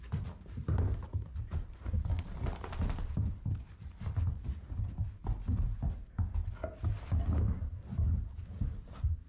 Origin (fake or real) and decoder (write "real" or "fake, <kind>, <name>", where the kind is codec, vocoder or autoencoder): real